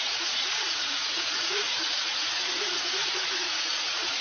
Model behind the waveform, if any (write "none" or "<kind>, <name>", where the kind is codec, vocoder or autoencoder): vocoder, Vocos